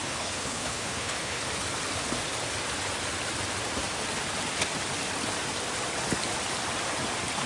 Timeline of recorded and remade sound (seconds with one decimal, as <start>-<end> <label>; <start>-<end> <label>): 0.0-1.4 remade; 1.4-7.5 recorded